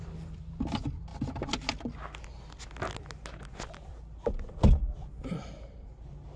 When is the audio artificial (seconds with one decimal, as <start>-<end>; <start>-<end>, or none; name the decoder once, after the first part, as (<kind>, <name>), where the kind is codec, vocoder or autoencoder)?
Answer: none